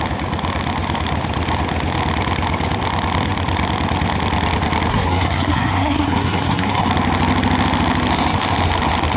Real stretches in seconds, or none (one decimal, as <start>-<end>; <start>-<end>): 0.0-4.9; 6.9-9.2